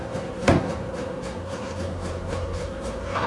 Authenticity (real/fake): fake